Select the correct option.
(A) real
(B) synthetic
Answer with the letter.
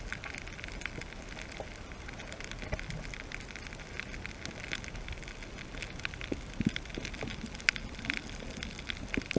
A